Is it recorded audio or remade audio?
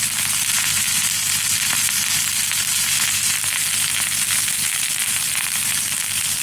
recorded